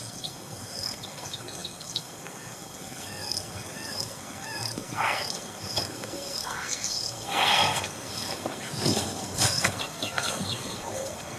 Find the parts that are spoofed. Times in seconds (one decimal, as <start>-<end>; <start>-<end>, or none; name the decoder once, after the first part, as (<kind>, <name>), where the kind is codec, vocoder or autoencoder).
0.0-11.4 (codec, SNAC)